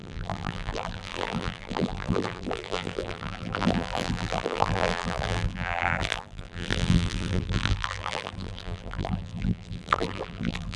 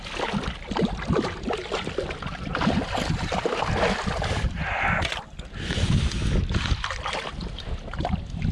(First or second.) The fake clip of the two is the first